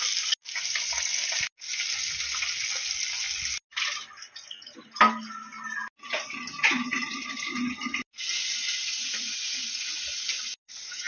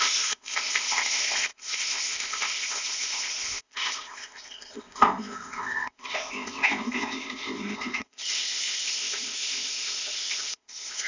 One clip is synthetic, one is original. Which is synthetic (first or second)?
second